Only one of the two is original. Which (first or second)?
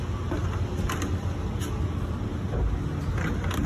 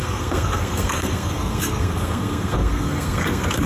first